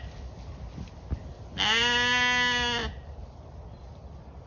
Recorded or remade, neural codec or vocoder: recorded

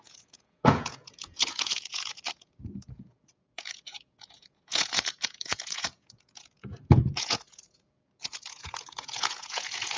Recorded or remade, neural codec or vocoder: remade, vocoder, Vocos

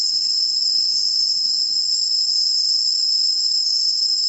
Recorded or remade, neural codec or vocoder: remade, codec, HILCodec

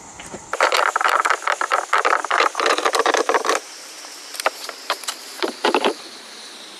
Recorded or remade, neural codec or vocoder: remade, vocoder, BigVGAN v2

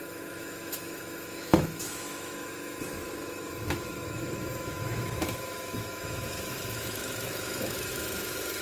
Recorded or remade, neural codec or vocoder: remade, autoencoder, DAC-VAE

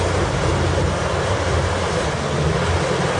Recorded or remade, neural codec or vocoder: recorded